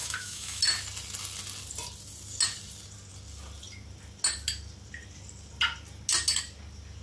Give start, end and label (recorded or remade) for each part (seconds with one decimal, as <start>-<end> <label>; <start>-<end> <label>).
0.0-0.6 remade; 0.6-7.0 recorded